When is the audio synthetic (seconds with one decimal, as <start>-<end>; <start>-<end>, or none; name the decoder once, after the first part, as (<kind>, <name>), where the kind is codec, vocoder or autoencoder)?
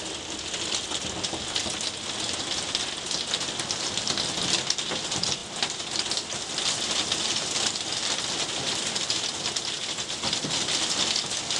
none